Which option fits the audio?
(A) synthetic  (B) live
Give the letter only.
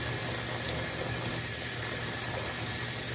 B